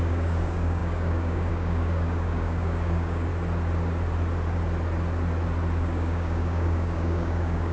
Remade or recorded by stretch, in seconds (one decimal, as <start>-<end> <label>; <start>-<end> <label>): 0.0-3.3 remade; 3.3-5.8 recorded; 5.8-7.7 remade